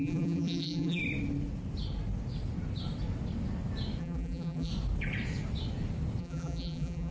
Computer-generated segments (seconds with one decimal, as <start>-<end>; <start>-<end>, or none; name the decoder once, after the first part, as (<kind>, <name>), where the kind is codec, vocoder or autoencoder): 0.0-1.0 (vocoder, BigVGAN v2); 4.0-4.7; 6.2-7.1